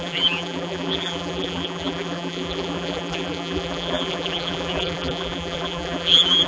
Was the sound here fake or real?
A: fake